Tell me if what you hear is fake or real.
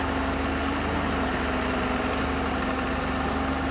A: real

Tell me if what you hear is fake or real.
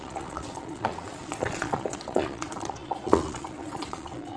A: fake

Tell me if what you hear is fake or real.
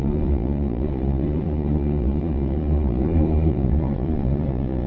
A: fake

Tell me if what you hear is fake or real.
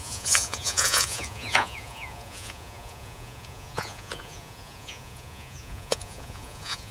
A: fake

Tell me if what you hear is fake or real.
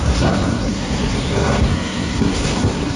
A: fake